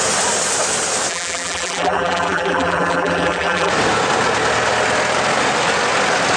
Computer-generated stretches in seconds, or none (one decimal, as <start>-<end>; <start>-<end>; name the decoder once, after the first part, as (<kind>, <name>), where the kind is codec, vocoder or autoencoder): 1.1-3.7 (vocoder, BigVGAN v2)